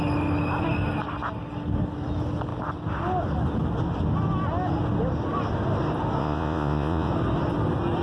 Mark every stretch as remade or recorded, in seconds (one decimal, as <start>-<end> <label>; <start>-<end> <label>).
0.0-6.2 recorded; 6.2-7.1 remade; 7.1-8.0 recorded